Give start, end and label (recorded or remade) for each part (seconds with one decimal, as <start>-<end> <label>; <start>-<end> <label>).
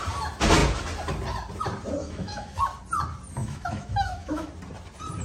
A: 0.0-2.0 recorded; 2.0-2.6 remade; 2.6-3.4 recorded; 3.4-4.5 remade; 4.5-5.2 recorded